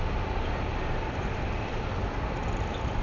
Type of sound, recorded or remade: recorded